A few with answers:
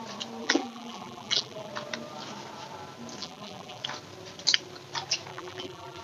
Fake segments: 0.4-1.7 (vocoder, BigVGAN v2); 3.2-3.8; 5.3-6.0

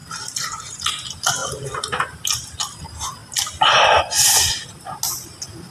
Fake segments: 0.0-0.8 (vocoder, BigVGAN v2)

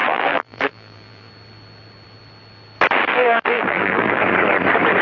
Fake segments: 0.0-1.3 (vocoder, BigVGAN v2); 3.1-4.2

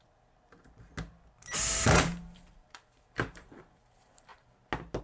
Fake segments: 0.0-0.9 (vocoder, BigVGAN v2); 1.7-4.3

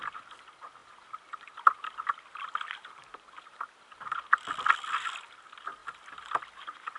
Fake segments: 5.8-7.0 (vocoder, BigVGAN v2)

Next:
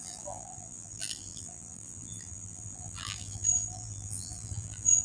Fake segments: 0.0-5.0 (vocoder, BigVGAN v2)

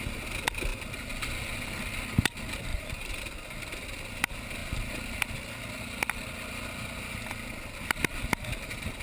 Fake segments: 2.7-3.3 (vocoder, BigVGAN v2)